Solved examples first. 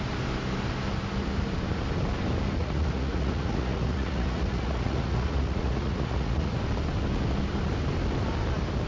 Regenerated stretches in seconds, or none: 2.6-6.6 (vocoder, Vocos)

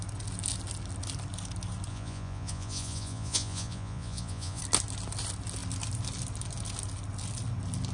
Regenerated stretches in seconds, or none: 1.9-4.6 (vocoder, Vocos)